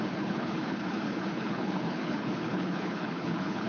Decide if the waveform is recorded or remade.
remade